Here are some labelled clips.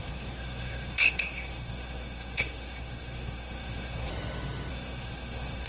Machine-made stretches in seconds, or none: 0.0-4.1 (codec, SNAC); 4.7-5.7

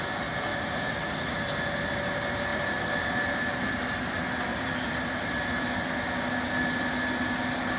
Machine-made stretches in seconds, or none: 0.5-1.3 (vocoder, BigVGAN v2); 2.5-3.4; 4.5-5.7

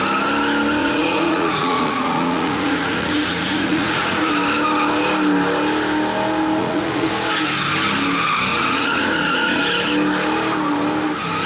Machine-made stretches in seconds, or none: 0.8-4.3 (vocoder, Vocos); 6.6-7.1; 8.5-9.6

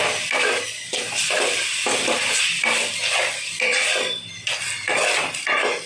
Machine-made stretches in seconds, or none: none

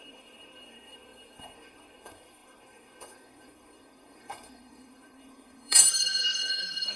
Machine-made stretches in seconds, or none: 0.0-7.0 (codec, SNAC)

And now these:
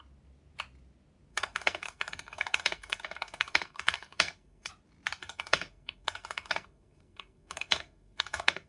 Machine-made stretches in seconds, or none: 1.3-4.7 (codec, SNAC); 5.2-8.7